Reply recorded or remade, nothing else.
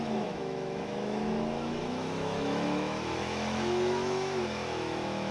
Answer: remade